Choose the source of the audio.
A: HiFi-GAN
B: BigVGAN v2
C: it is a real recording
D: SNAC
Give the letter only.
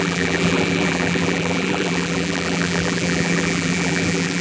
B